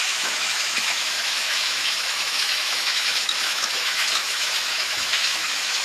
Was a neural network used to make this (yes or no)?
yes